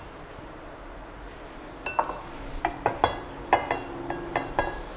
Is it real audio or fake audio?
real